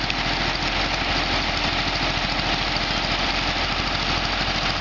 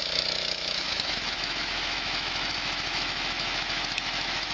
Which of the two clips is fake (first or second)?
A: second